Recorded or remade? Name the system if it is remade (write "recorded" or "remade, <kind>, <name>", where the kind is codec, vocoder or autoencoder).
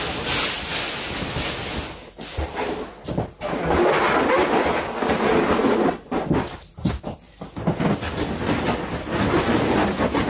recorded